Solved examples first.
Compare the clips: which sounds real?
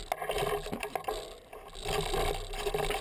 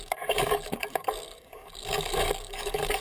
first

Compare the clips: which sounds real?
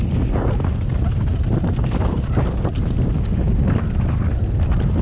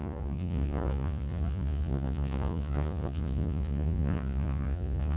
first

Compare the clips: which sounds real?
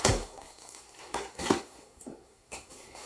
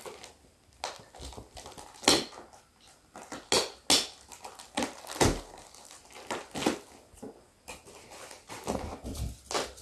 second